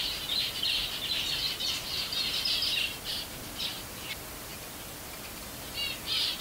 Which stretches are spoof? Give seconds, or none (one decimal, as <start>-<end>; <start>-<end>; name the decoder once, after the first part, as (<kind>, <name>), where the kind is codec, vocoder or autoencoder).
0.8-2.1 (vocoder, BigVGAN v2); 3.1-3.7; 4.5-5.6